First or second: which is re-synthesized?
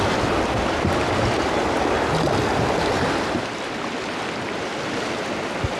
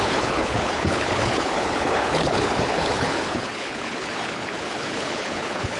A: second